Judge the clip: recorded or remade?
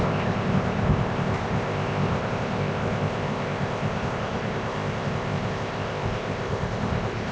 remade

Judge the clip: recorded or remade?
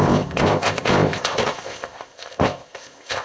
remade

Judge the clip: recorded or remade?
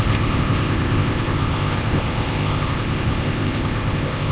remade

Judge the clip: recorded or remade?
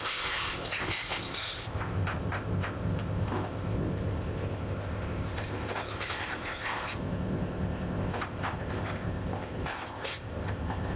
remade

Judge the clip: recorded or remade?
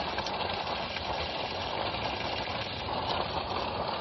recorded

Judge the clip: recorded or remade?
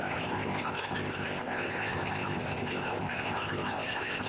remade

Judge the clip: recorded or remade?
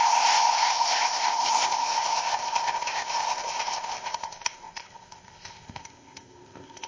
remade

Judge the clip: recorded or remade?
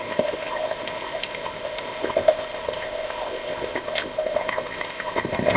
remade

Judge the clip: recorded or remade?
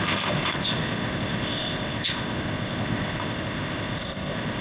remade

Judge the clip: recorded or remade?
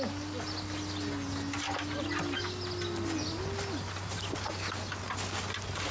recorded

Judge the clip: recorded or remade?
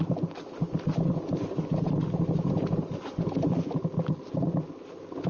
recorded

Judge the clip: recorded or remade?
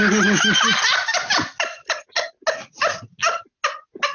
recorded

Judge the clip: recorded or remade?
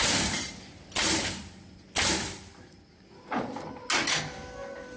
recorded